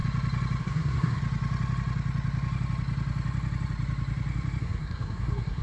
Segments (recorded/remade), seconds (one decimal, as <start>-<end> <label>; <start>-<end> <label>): 0.0-0.6 recorded; 0.6-1.2 remade; 1.2-4.6 recorded; 4.6-5.6 remade